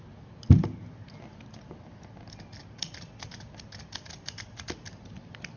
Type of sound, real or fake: real